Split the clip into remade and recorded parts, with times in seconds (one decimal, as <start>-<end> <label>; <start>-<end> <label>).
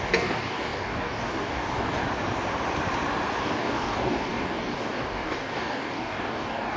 0.0-2.0 remade; 2.0-3.4 recorded; 3.4-6.8 remade